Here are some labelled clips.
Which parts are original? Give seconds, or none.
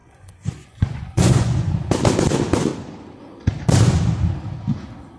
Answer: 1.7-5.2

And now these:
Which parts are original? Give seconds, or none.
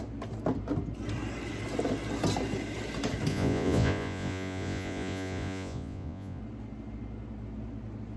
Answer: 0.0-3.3; 6.4-8.2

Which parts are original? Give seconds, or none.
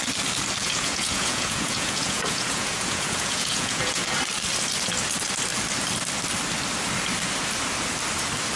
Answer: 0.0-0.6; 4.0-8.6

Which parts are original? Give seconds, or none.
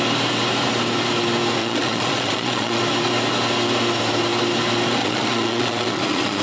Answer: 0.0-1.6; 2.8-5.0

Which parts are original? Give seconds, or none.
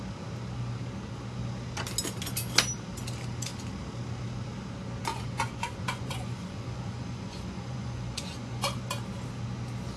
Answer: 0.0-5.1; 8.9-10.0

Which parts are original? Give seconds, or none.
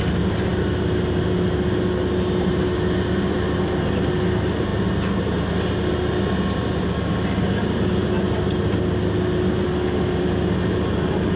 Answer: 0.0-11.4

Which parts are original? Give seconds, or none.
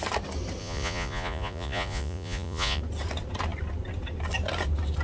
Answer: 0.0-0.6; 2.8-5.0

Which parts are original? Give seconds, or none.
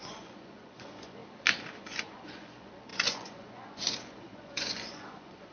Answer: 1.2-1.8